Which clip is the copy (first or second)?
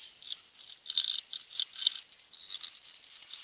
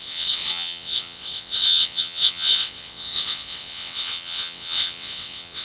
second